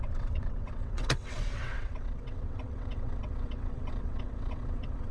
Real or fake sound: fake